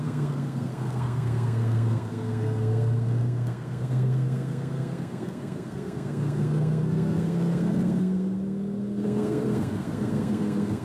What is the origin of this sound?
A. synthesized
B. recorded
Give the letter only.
A